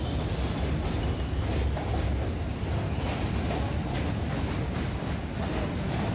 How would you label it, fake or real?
real